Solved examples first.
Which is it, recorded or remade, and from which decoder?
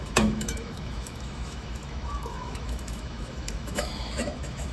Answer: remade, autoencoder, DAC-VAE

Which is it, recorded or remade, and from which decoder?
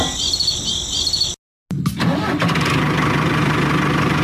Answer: recorded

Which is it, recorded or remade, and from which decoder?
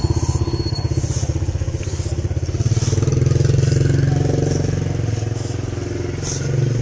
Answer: recorded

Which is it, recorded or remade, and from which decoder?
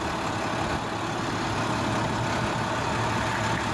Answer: recorded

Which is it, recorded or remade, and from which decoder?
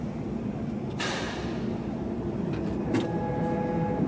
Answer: recorded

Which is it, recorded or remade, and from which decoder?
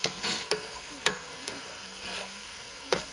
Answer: remade, codec, SNAC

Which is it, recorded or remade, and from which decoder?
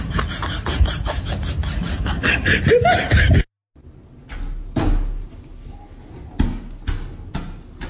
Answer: recorded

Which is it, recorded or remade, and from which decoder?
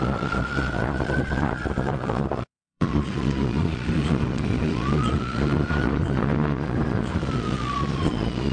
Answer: remade, vocoder, Vocos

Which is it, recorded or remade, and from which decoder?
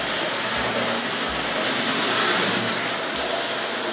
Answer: recorded